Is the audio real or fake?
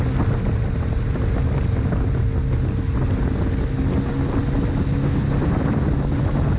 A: real